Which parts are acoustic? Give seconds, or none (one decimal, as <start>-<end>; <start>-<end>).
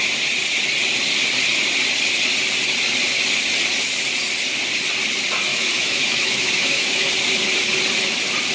0.0-5.5; 7.1-8.5